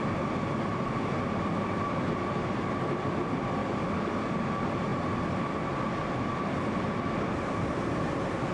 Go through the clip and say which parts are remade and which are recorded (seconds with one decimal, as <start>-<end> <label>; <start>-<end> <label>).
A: 0.0-8.5 recorded